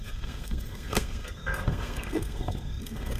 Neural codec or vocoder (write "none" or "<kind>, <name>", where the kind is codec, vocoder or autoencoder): codec, SNAC